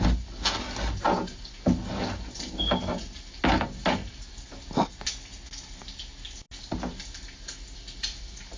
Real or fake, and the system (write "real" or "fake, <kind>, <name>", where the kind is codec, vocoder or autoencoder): real